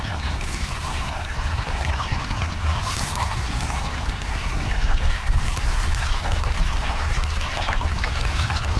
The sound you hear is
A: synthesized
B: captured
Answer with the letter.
A